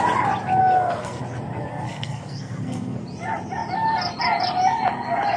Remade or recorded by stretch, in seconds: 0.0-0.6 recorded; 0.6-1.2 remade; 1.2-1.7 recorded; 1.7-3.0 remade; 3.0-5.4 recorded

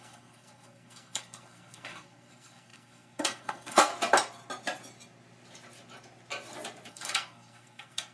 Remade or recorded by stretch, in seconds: 0.0-3.9 remade; 3.9-6.9 recorded; 6.9-8.1 remade

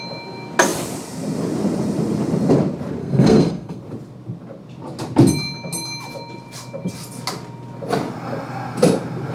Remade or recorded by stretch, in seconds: 0.0-3.0 recorded; 3.0-3.8 remade; 3.8-9.3 recorded

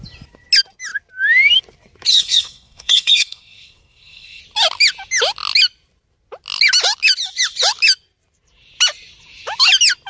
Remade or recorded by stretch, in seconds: 0.0-2.1 recorded; 2.1-4.4 remade; 4.4-10.1 recorded

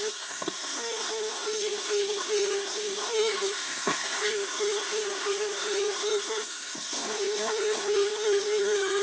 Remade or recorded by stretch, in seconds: 0.0-9.0 remade

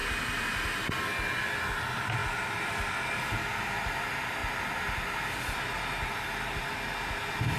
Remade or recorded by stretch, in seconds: 0.0-7.6 recorded

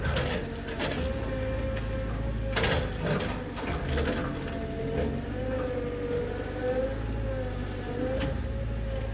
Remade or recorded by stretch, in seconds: 0.0-9.1 recorded

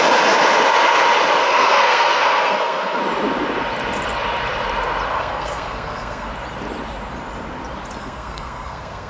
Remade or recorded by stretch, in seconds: 0.0-1.4 recorded; 1.4-3.0 remade; 3.0-5.1 recorded; 5.1-6.3 remade; 6.3-8.0 recorded; 8.0-9.1 remade